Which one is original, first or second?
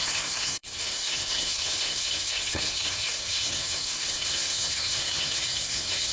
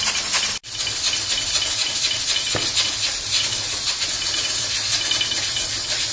second